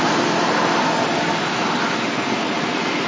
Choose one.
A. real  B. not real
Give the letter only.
A